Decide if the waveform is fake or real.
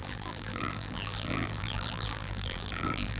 fake